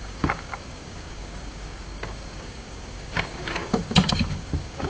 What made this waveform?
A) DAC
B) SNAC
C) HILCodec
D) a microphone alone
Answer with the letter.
A